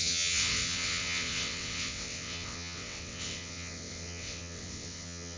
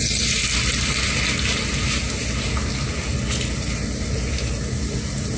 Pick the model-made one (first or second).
first